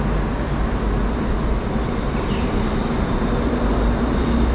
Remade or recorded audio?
recorded